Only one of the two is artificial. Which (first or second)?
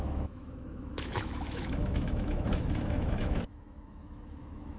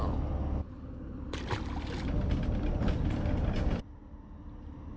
first